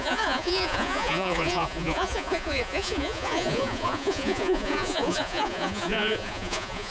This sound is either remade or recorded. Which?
remade